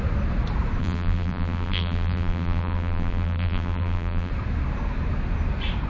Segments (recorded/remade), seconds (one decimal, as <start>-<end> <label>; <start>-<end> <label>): 0.0-0.8 recorded; 0.8-4.3 remade; 4.3-5.9 recorded